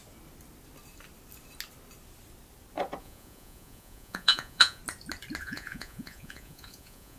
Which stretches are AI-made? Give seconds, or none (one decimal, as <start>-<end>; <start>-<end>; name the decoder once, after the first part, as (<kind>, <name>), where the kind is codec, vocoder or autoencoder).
3.0-4.8 (vocoder, Vocos); 5.4-7.2

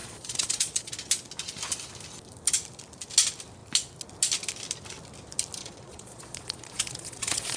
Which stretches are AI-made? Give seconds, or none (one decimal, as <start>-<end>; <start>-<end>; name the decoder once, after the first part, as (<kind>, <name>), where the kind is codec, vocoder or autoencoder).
0.0-0.9 (vocoder, Vocos); 5.6-7.6